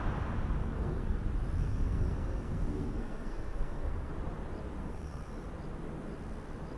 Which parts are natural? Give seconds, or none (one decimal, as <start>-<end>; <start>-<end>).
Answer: 0.0-0.6; 1.2-1.6; 4.1-4.8; 5.3-6.8